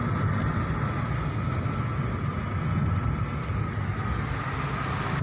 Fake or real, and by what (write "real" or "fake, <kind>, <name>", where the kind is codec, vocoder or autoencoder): real